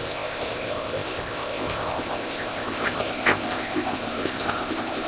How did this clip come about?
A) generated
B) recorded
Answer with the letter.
A